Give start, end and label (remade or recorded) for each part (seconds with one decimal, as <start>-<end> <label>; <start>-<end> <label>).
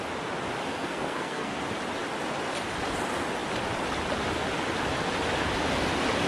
0.0-0.7 recorded; 0.7-1.6 remade; 1.6-6.3 recorded